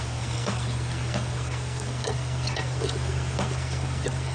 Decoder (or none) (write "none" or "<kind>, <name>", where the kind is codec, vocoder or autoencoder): codec, SNAC